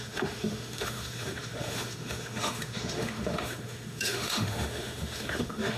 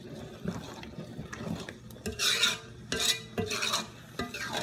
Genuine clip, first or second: second